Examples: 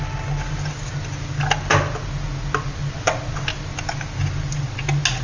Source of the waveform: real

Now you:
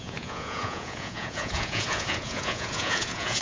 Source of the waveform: fake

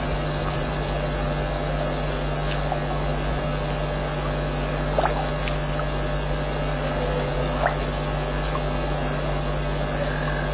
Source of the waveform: real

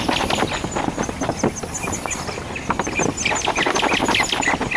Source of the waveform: real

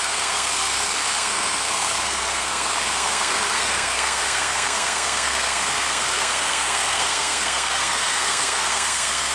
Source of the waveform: fake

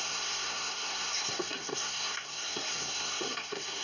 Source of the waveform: fake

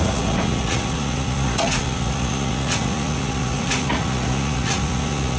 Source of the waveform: fake